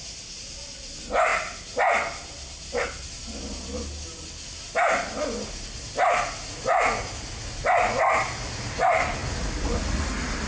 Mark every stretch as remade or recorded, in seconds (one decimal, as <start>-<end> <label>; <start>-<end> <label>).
0.0-10.5 recorded